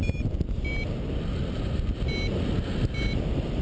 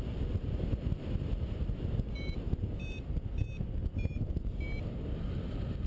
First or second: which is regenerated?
second